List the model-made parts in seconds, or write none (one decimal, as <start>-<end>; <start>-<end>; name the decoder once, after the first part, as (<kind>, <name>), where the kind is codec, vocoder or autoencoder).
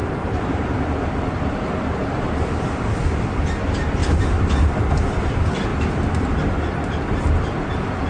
0.0-2.7 (vocoder, BigVGAN v2); 4.0-4.8